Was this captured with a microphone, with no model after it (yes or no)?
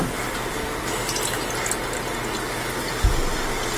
yes